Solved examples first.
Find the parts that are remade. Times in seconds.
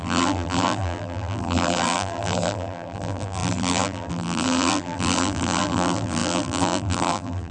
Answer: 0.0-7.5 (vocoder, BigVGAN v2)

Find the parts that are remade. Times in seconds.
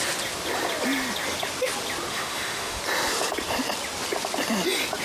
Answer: 2.1-2.8 (autoencoder, DAC-VAE)